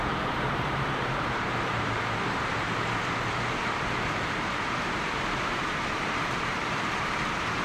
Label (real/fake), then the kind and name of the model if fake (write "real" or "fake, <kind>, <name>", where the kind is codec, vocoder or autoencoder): fake, vocoder, BigVGAN v2